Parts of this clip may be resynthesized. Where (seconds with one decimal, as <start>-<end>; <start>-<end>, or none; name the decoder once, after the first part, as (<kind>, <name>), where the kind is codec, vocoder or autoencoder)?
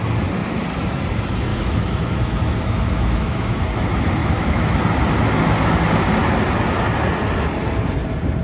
1.5-3.6 (autoencoder, DAC-VAE); 4.2-4.8